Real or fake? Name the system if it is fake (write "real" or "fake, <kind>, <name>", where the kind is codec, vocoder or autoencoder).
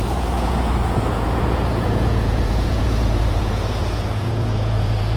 fake, vocoder, Vocos